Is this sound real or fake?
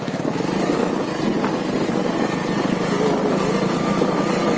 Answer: real